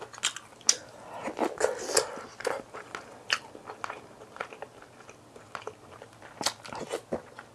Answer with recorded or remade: recorded